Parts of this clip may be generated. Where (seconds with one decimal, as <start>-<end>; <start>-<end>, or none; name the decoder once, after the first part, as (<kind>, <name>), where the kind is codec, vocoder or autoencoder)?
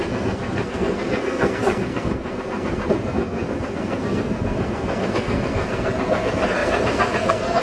0.0-7.6 (codec, SNAC)